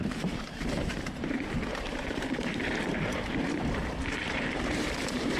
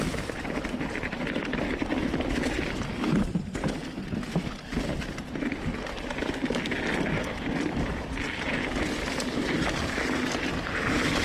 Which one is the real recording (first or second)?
second